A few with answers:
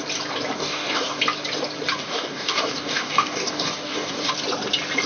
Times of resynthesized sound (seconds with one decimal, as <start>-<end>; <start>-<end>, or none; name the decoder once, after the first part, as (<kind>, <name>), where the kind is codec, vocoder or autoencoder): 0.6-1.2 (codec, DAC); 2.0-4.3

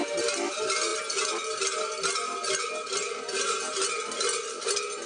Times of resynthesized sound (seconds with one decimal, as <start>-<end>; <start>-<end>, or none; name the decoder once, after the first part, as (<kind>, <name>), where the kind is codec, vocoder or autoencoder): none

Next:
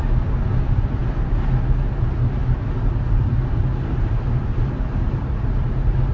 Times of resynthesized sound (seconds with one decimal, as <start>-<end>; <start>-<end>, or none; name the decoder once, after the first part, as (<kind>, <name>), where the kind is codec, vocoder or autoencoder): none